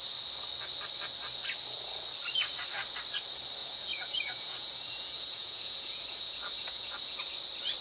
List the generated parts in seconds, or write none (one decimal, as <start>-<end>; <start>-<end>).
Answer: 3.6-7.2